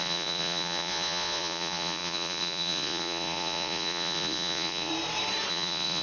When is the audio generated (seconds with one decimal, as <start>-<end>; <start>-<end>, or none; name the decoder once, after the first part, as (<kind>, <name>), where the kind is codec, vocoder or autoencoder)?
0.0-4.9 (vocoder, Vocos); 5.5-6.0